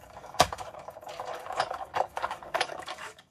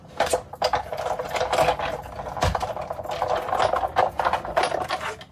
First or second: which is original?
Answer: second